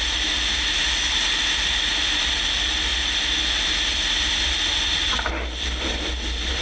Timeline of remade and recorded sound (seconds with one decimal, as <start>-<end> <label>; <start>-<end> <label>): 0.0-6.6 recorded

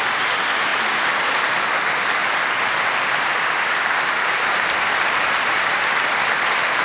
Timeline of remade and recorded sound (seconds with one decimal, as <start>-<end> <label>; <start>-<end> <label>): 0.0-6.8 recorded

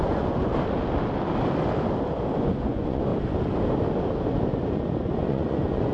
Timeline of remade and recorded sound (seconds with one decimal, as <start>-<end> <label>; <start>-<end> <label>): 0.0-0.5 remade; 0.5-2.3 recorded; 2.3-3.1 remade; 3.1-5.1 recorded; 5.1-5.9 remade